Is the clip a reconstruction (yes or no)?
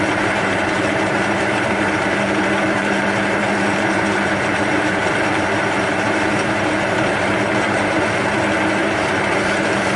yes